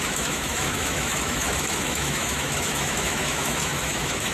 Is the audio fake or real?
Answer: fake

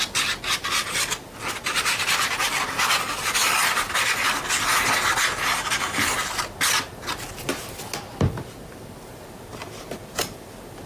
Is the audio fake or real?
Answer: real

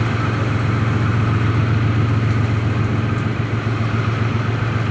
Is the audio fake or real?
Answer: real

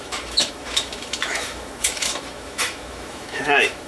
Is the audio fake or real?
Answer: fake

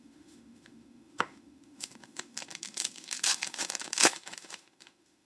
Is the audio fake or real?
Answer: fake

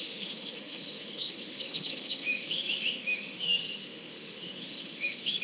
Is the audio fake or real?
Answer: fake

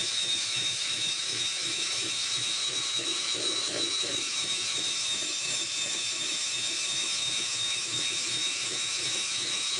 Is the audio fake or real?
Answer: fake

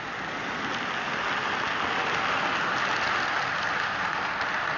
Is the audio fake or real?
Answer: real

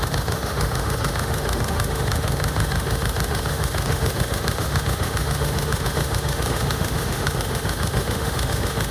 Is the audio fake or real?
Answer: fake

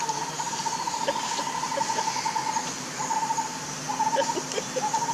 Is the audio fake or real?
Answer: real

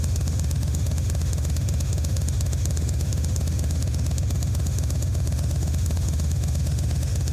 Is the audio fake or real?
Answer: fake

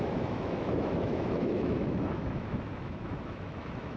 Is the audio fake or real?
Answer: fake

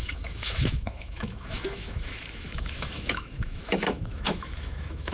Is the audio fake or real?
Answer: fake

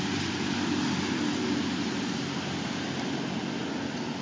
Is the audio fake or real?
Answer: real